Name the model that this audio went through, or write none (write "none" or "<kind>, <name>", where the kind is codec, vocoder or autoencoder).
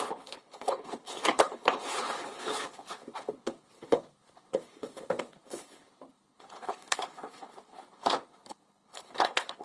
codec, HILCodec